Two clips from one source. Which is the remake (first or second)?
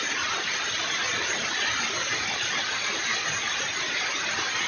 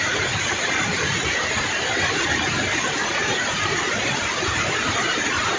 second